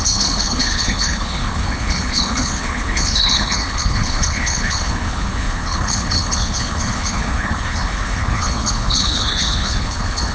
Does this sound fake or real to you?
fake